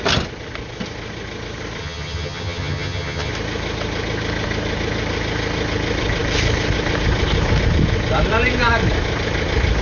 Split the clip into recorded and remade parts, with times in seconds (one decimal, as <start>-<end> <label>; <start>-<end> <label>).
0.0-1.8 recorded; 1.8-3.3 remade; 3.3-9.8 recorded